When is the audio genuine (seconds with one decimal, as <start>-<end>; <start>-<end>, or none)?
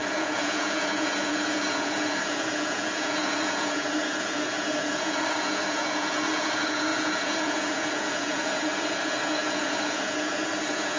none